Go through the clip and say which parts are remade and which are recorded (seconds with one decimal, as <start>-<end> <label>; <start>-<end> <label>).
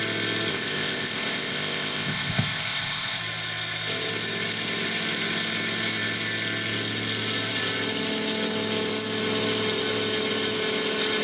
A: 0.0-0.5 recorded; 0.5-3.2 remade; 3.2-11.2 recorded